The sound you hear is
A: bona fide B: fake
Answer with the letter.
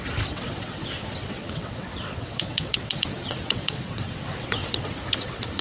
B